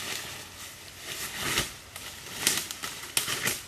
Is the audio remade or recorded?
recorded